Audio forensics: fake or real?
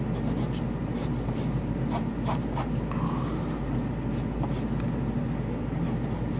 real